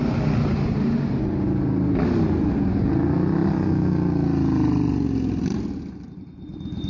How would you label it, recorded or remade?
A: recorded